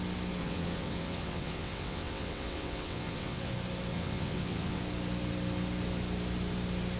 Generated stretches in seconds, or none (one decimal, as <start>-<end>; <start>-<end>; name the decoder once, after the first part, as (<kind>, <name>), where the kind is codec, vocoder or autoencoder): 0.4-3.5 (vocoder, WaveNeXt); 3.9-4.8